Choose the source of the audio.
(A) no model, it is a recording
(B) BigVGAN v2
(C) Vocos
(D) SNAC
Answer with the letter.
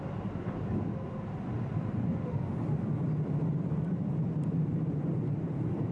B